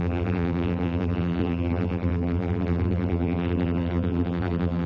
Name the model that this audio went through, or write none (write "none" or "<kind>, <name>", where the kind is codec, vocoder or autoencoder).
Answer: vocoder, BigVGAN v2